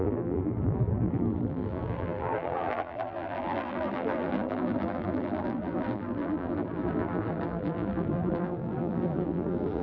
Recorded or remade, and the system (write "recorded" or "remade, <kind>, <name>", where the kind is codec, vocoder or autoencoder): remade, vocoder, BigVGAN v2